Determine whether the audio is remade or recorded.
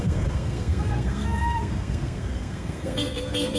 remade